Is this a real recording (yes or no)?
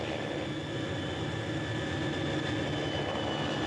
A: yes